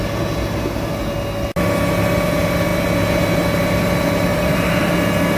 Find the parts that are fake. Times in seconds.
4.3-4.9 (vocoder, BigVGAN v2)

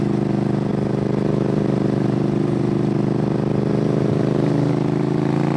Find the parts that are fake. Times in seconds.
none

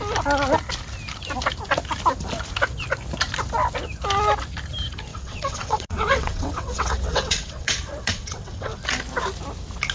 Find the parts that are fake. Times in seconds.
5.1-8.8 (vocoder, WaveNeXt)

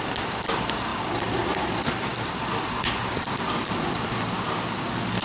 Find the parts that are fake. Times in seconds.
0.9-4.0 (vocoder, BigVGAN v2)